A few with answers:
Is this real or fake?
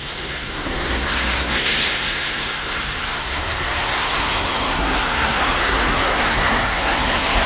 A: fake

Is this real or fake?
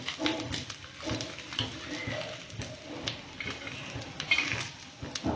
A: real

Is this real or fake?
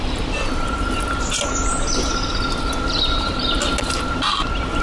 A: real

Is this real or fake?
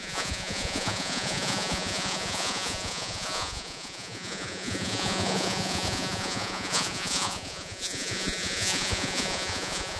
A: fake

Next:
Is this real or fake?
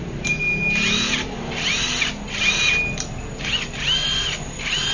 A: real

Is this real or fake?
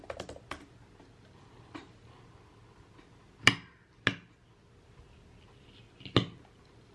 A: real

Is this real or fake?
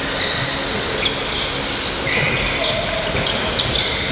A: real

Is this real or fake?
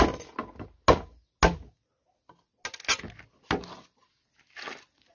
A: real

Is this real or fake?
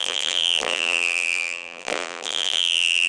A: fake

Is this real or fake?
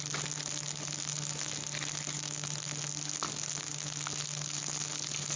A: real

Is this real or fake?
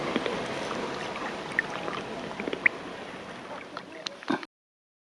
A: real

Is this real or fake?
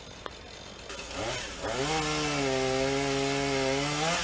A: real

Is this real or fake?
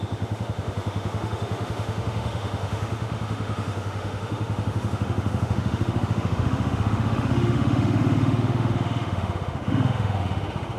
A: fake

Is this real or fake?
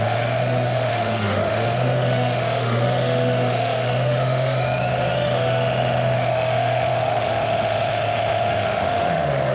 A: fake